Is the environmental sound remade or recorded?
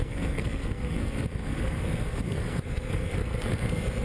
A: remade